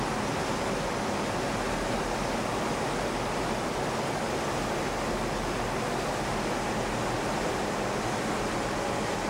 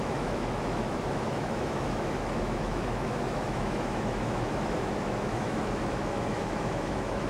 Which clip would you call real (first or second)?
first